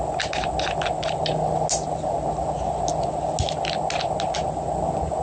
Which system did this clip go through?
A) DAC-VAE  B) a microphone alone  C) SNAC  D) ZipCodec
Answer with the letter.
B